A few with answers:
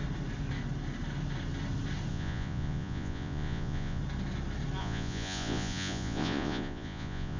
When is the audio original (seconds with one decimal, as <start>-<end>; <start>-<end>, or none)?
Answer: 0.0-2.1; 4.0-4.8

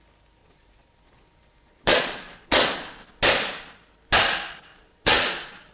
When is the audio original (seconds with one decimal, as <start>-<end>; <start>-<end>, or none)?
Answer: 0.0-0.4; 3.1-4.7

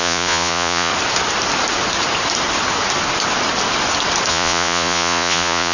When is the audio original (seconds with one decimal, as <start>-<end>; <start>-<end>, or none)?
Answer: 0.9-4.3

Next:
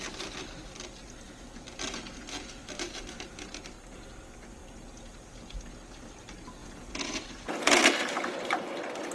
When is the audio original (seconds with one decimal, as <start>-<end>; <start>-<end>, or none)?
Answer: 0.0-6.6; 7.8-9.1

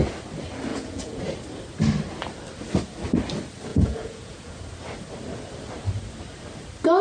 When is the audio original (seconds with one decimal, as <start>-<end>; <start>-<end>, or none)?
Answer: 0.0-0.7; 1.2-3.7; 4.6-7.0